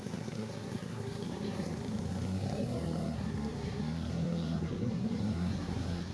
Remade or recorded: remade